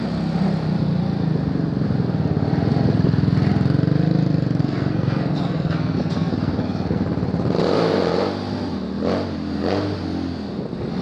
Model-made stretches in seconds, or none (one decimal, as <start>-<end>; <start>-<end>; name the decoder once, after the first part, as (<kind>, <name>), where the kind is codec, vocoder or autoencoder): 4.6-7.0 (codec, SNAC)